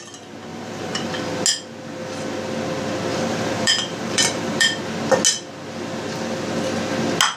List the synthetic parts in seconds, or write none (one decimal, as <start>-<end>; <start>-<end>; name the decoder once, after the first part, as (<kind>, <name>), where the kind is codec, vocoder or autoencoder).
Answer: 0.5-1.1 (vocoder, BigVGAN v2); 3.1-4.8